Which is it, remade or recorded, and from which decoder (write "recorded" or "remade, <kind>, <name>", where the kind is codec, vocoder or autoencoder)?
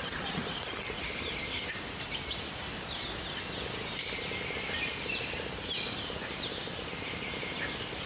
recorded